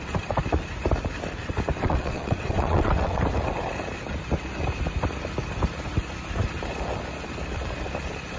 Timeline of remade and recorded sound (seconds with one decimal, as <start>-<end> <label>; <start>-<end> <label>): 0.0-1.8 recorded; 1.8-3.2 remade; 3.2-8.4 recorded